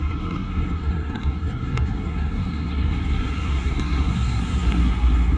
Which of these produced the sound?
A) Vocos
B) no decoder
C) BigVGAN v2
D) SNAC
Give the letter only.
D